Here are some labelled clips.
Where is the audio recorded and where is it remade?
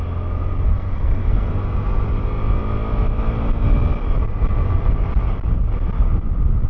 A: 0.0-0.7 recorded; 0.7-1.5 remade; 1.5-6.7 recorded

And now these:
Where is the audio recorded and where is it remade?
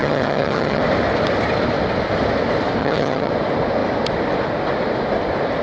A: 0.0-0.8 remade; 0.8-2.8 recorded; 2.8-3.3 remade; 3.3-5.6 recorded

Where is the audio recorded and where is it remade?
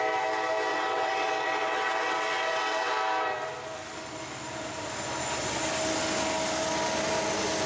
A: 0.0-0.7 recorded; 0.7-2.9 remade; 2.9-7.7 recorded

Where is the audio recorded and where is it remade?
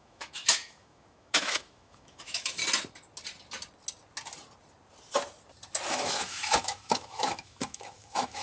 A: 0.0-2.6 remade; 2.6-5.9 recorded; 5.9-8.4 remade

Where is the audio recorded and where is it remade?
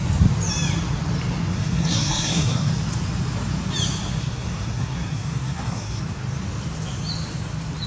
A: 0.0-1.5 recorded; 1.5-2.7 remade; 2.7-4.2 recorded; 4.2-6.0 remade; 6.0-7.9 recorded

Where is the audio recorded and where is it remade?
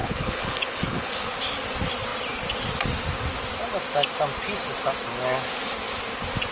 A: 0.0-1.1 remade; 1.1-6.5 recorded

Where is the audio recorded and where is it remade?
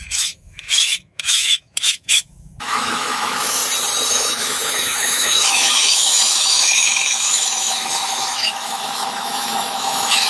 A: 0.0-3.6 remade; 3.6-4.1 recorded; 4.1-10.3 remade